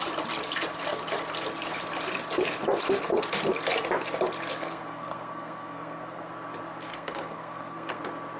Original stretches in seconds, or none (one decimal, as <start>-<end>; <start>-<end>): 0.0-4.6; 6.3-6.9; 8.0-8.4